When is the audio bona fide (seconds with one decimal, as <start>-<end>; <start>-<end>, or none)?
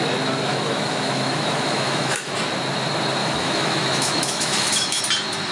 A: 0.0-0.5; 2.3-3.2; 5.0-5.5